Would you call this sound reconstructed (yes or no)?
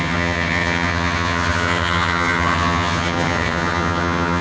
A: yes